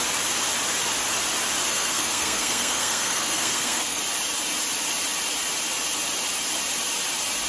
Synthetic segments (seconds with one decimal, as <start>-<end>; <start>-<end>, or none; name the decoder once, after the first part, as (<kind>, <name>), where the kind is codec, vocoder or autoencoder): 1.7-4.0 (codec, SNAC)